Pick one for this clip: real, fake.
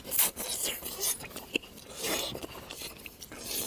real